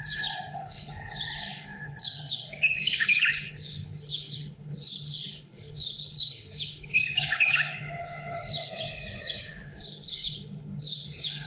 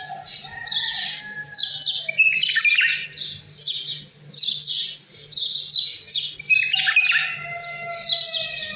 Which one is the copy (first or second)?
first